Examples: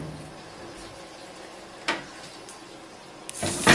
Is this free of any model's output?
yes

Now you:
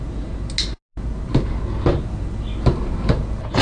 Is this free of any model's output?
yes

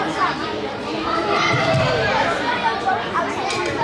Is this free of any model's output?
no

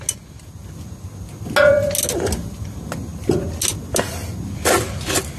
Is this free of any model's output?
yes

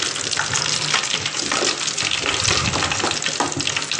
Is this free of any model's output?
yes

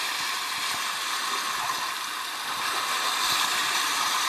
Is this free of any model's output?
yes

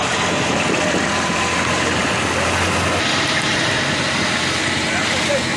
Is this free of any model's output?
no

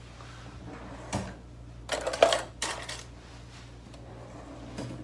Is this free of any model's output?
yes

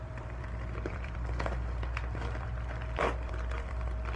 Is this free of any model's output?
no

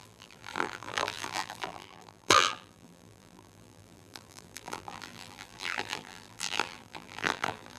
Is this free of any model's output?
no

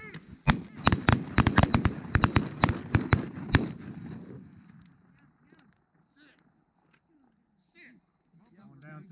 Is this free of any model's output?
yes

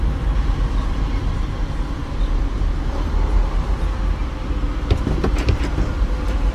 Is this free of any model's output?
no